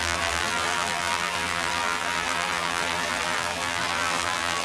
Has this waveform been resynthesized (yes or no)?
yes